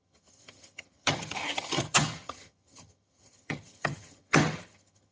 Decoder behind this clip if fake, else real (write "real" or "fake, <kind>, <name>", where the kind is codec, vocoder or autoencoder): fake, vocoder, HiFi-GAN